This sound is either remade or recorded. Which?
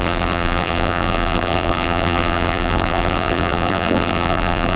remade